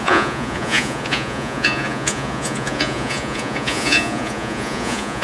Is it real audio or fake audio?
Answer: fake